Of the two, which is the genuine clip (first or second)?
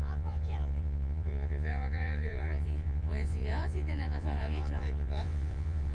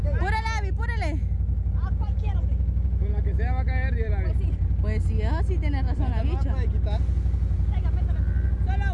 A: second